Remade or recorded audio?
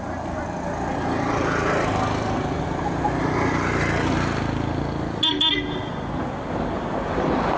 recorded